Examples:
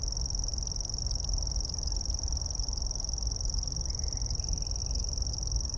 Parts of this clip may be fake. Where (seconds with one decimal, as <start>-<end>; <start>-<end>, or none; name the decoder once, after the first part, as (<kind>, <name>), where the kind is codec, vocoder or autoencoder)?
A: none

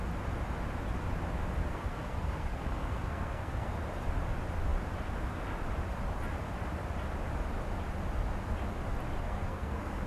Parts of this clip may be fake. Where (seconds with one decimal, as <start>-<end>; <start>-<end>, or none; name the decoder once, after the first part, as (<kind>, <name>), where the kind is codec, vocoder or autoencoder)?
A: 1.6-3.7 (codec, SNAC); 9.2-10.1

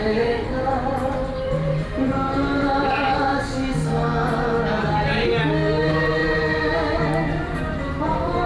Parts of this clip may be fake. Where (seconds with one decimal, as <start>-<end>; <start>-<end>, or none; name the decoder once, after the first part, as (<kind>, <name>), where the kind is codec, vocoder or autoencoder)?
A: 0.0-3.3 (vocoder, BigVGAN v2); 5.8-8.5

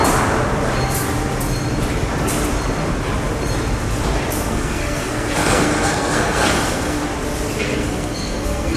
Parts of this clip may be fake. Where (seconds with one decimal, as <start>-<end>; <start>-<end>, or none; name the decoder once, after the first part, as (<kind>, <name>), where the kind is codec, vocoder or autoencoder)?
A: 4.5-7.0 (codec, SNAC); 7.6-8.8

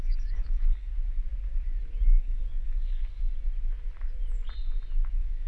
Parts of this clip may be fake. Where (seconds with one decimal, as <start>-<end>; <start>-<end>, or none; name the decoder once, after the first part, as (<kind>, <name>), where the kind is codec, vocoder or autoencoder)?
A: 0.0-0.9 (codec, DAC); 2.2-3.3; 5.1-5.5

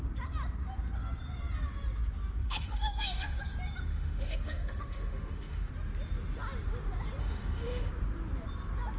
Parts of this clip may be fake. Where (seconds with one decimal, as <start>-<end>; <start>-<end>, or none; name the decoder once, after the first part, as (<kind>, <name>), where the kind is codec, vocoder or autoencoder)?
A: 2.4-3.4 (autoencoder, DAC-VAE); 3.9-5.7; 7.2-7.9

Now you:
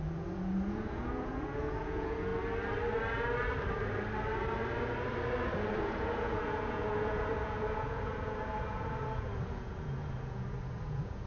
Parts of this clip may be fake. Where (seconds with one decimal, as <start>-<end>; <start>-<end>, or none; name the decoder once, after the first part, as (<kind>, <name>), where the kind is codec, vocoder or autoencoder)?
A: 0.0-2.3 (vocoder, Vocos); 5.8-11.3

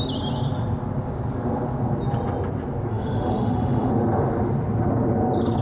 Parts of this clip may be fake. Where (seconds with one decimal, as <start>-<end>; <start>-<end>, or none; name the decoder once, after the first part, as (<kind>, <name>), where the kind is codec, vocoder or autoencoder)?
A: 2.9-3.9 (autoencoder, DAC-VAE)